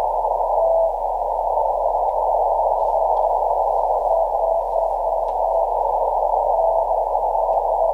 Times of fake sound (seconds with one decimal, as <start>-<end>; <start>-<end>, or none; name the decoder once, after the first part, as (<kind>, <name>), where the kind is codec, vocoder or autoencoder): 1.6-2.3 (vocoder, BigVGAN v2); 4.0-4.6